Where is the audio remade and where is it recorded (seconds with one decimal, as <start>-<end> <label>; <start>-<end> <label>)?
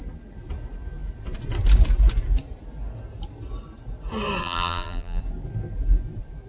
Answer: 0.0-4.4 recorded; 4.4-5.2 remade; 5.2-6.5 recorded